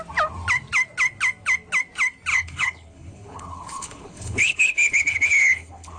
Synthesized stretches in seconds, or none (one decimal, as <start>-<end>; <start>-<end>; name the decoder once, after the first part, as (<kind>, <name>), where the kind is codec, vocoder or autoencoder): 2.3-6.0 (codec, HILCodec)